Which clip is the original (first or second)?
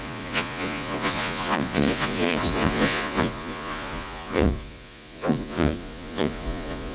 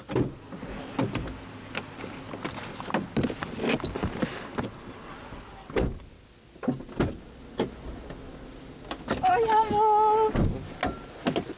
second